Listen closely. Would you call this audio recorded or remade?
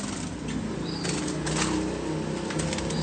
recorded